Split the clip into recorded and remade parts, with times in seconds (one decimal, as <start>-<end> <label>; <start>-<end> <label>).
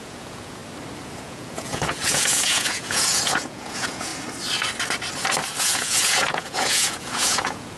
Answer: 0.0-0.6 remade; 0.6-1.2 recorded; 1.2-4.1 remade; 4.1-5.6 recorded; 5.6-7.8 remade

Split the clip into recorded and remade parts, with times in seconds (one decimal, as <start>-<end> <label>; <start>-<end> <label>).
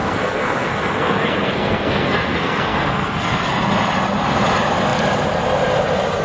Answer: 0.0-3.5 remade; 3.5-6.2 recorded